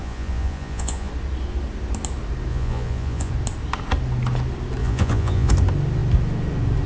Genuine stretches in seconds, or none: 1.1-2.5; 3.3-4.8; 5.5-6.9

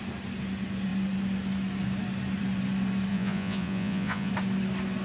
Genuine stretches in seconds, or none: 0.0-3.1; 4.3-5.0

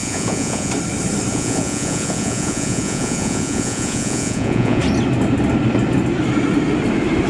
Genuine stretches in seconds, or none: 0.7-1.3; 4.8-7.3

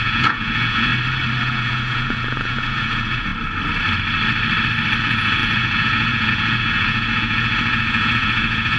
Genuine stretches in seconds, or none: 0.9-1.4; 3.3-5.0

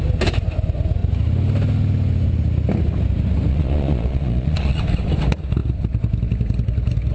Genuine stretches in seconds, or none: 0.0-3.5; 4.8-7.1